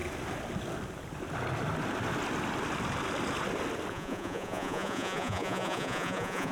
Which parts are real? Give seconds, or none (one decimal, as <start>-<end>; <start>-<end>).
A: 0.0-3.9